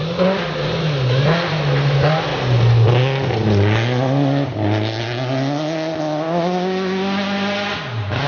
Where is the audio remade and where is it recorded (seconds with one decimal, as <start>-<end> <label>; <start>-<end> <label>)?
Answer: 0.0-8.3 recorded